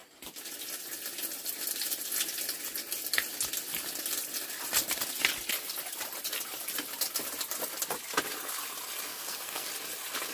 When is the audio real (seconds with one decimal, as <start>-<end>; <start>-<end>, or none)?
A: 0.0-9.1; 9.7-10.3

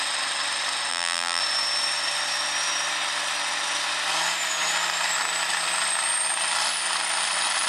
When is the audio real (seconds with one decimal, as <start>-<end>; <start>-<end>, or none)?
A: 0.0-0.9; 1.4-7.7

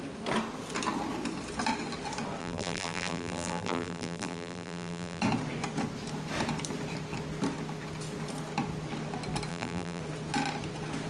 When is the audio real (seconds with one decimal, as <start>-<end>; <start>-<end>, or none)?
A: 0.0-2.4; 5.2-9.5; 10.0-11.1

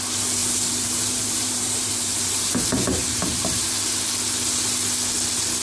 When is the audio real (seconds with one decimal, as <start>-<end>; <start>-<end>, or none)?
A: 0.0-0.4; 3.7-5.6

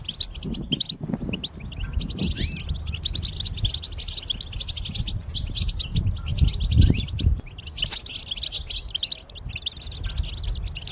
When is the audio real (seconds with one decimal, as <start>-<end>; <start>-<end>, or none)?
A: 0.0-10.9

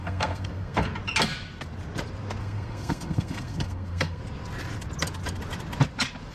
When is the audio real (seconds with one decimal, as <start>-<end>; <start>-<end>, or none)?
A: 0.9-2.4; 4.2-6.3